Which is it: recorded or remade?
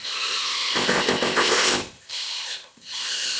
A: remade